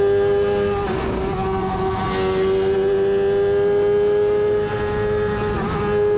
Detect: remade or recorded recorded